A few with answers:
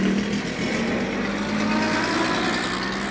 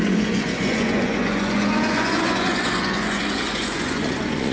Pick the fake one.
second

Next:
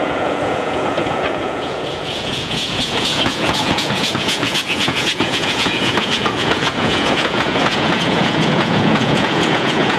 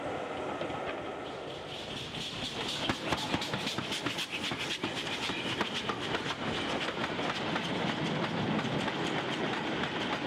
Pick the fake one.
first